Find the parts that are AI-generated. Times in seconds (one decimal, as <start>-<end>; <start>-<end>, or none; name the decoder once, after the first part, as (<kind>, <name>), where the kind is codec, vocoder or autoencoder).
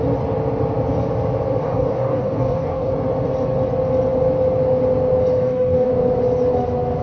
1.6-2.9 (codec, DAC); 5.3-5.9